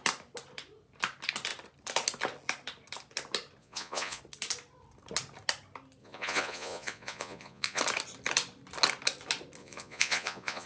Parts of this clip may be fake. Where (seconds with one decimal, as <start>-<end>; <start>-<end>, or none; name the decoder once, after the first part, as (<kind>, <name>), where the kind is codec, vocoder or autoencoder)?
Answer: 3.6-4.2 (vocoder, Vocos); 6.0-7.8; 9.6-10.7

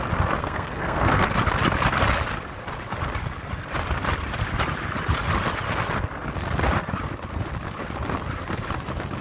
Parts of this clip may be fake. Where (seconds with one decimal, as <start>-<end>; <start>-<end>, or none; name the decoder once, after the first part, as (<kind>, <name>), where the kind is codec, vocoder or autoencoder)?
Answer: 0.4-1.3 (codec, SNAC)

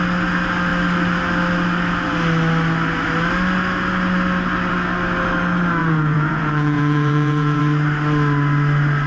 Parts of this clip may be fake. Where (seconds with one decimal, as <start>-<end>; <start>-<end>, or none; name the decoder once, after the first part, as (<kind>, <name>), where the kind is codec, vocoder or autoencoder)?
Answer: 5.8-7.6 (vocoder, Vocos)

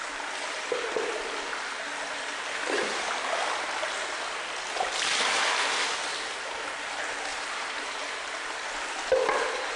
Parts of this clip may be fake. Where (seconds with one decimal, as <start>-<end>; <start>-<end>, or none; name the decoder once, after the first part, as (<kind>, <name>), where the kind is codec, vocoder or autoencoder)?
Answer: 7.3-8.0 (vocoder, BigVGAN v2)

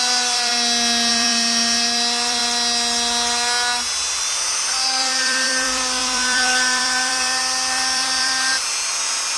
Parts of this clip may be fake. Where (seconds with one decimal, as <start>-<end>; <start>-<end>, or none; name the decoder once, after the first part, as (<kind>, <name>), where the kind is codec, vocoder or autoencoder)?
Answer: 0.0-0.5 (vocoder, BigVGAN v2); 1.1-2.4; 4.1-9.4

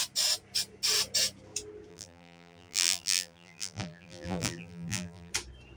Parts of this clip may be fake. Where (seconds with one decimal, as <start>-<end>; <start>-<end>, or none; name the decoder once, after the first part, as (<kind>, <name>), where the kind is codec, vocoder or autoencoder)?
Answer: 1.9-5.3 (vocoder, BigVGAN v2)